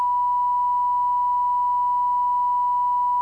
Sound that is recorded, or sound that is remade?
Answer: recorded